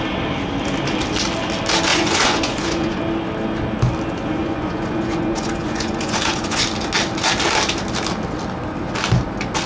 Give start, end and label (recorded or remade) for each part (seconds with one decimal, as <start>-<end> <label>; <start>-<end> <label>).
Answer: 0.0-1.9 recorded; 1.9-3.0 remade; 3.0-4.4 recorded; 4.4-6.6 remade; 6.6-9.7 recorded